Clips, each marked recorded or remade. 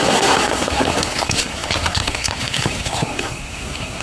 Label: remade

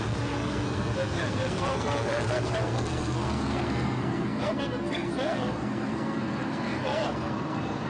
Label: remade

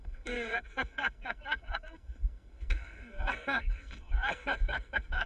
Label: remade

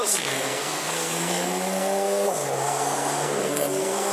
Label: remade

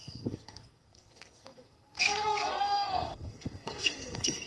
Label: remade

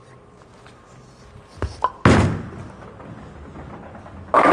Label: recorded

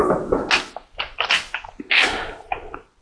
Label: recorded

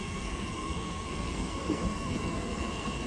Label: remade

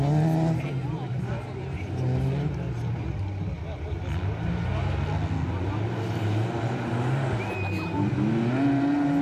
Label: recorded